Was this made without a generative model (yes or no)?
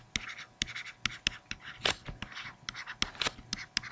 yes